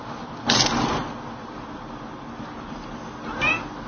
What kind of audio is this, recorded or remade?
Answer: recorded